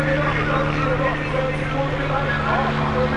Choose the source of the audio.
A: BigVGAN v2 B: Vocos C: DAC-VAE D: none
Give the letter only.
D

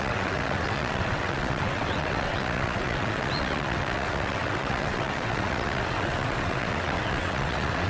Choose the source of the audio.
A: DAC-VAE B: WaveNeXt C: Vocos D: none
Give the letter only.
B